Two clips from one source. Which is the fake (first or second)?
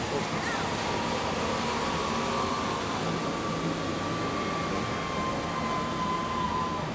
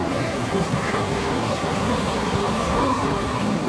second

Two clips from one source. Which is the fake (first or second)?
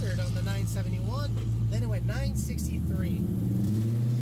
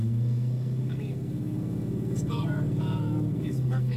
second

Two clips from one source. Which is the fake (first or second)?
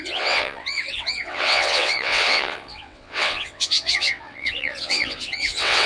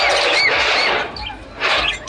first